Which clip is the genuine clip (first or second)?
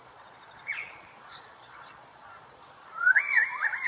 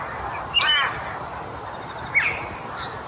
second